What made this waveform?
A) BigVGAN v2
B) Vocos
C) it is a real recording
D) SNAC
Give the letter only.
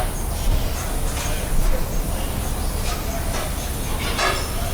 C